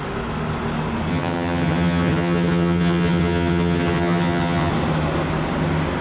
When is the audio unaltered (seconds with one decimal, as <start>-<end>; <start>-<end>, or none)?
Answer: 0.0-1.1; 4.7-6.0